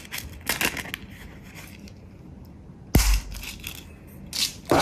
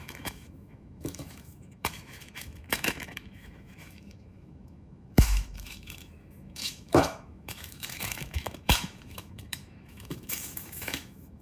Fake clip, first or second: second